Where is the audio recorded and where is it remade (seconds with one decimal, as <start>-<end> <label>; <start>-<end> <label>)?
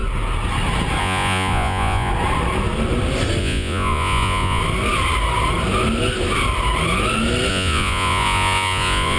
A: 0.0-1.0 recorded; 1.0-2.1 remade; 2.1-3.4 recorded; 3.4-4.6 remade; 4.6-7.5 recorded; 7.5-9.2 remade